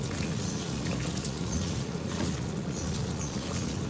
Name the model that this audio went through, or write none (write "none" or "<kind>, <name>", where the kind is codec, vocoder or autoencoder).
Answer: vocoder, Vocos